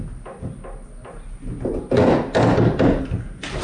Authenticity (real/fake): real